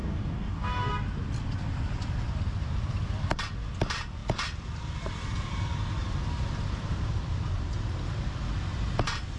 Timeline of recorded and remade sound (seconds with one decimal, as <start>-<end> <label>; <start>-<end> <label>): 0.0-0.9 remade; 0.9-9.4 recorded